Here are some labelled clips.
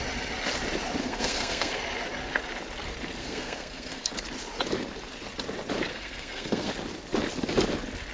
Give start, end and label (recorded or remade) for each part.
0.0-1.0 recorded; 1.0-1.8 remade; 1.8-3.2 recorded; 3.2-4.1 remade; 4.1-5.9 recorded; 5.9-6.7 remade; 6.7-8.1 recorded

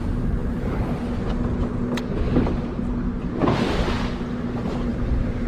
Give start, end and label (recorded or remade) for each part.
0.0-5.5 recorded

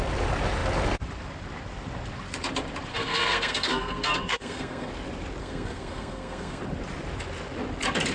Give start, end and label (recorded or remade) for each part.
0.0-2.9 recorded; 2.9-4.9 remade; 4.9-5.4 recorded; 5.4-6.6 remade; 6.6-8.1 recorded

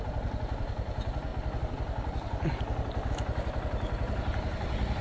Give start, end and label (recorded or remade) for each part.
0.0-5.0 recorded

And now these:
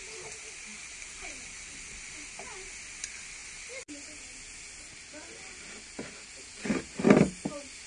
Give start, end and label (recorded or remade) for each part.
0.0-7.9 recorded

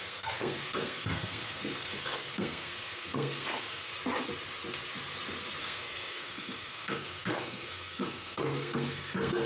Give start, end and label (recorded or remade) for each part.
0.0-3.9 remade; 3.9-5.6 recorded; 5.6-9.5 remade

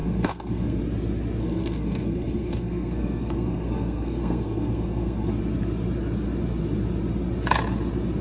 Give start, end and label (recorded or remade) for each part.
0.0-0.8 remade; 0.8-1.4 recorded; 1.4-5.3 remade; 5.3-8.2 recorded

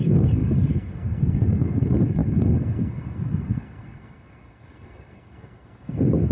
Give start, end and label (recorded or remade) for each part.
0.0-6.3 remade